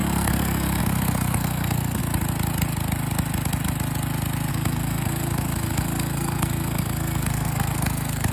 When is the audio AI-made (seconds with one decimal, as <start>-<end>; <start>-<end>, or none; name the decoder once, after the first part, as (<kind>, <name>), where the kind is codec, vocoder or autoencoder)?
0.0-2.0 (codec, SNAC); 4.5-8.3